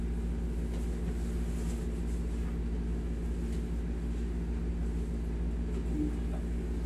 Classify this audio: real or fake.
real